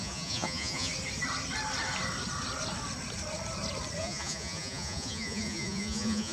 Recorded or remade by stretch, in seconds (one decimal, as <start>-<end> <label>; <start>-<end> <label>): 0.0-0.9 remade; 0.9-4.0 recorded; 4.0-6.3 remade

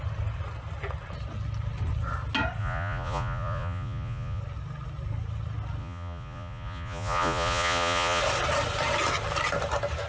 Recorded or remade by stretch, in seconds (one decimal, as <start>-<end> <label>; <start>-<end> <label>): 0.0-2.6 recorded; 2.6-4.4 remade; 4.4-5.8 recorded; 5.8-8.2 remade; 8.2-10.1 recorded

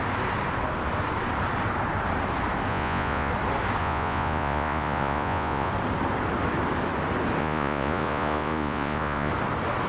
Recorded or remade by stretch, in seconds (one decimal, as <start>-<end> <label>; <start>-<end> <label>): 0.0-2.7 recorded; 2.7-3.3 remade; 3.3-3.8 recorded; 3.8-5.7 remade; 5.7-7.4 recorded; 7.4-9.3 remade; 9.3-9.9 recorded

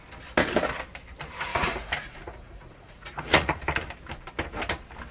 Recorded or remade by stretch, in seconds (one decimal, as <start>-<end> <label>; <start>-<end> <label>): 0.0-1.5 recorded; 1.5-3.6 remade; 3.6-5.1 recorded

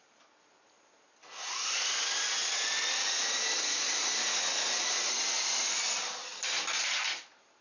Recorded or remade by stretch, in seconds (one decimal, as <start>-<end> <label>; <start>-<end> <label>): 0.0-7.6 recorded

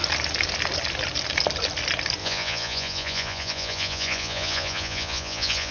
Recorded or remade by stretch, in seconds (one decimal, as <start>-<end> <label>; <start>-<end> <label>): 0.0-2.2 recorded; 2.2-5.7 remade